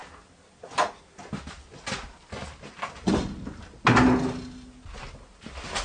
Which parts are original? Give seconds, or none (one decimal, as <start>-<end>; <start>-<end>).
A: 0.0-5.8